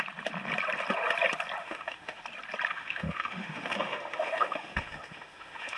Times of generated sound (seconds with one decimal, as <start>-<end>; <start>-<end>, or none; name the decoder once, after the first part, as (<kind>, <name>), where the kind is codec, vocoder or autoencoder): 1.6-2.2 (autoencoder, DAC-VAE); 2.7-5.8